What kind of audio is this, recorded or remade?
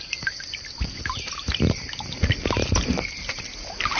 recorded